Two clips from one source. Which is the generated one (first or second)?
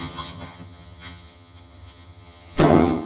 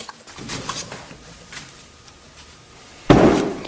first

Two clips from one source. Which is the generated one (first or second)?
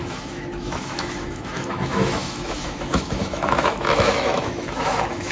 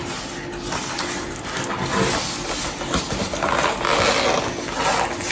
first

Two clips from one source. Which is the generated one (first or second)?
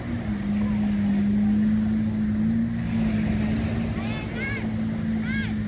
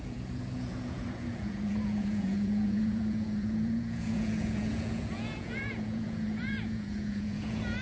second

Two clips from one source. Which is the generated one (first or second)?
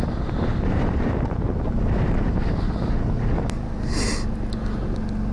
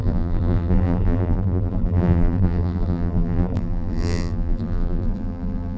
second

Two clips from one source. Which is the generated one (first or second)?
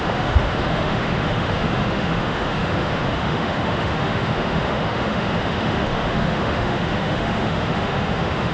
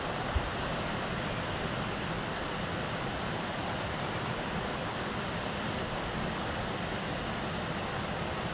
first